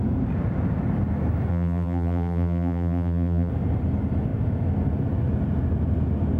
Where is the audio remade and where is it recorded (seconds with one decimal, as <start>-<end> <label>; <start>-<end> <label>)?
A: 0.0-1.5 recorded; 1.5-3.5 remade; 3.5-6.4 recorded